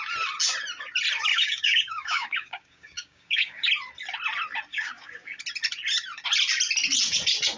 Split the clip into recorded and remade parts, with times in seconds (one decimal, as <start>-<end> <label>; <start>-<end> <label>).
0.0-1.3 recorded; 1.3-3.7 remade; 3.7-4.7 recorded; 4.7-5.4 remade; 5.4-7.6 recorded

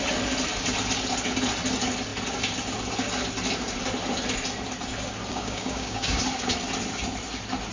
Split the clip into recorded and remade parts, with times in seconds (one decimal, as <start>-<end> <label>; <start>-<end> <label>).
0.0-5.3 recorded; 5.3-6.2 remade; 6.2-7.7 recorded

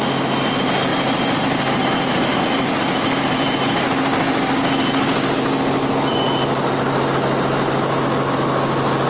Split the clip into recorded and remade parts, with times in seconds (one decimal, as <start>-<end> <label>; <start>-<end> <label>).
0.0-9.1 recorded

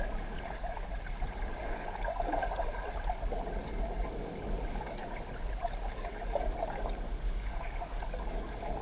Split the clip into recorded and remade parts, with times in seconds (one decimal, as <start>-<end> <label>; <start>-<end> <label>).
0.0-0.9 remade; 0.9-1.6 recorded; 1.6-2.4 remade; 2.4-3.6 recorded; 3.6-5.0 remade; 5.0-5.9 recorded; 5.9-8.8 remade

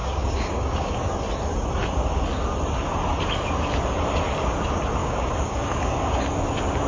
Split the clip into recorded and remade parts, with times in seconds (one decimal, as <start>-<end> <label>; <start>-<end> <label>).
0.0-1.1 remade; 1.1-5.0 recorded; 5.0-6.0 remade; 6.0-6.9 recorded

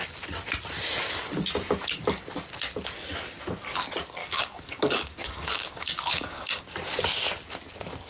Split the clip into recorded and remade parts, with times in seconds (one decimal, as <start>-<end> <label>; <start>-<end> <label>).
0.0-4.2 recorded; 4.2-6.6 remade; 6.6-8.1 recorded

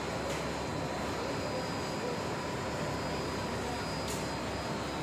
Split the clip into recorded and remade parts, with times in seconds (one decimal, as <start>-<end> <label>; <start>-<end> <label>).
0.0-5.0 recorded

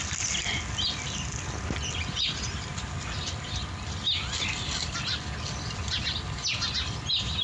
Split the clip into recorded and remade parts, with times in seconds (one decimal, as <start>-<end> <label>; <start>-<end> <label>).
0.0-7.4 recorded